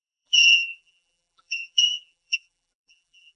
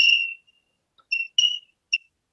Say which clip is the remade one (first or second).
first